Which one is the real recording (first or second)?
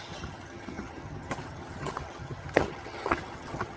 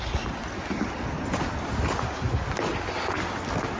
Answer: second